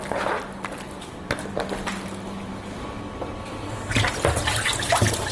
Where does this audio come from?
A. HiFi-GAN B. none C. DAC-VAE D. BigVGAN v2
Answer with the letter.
B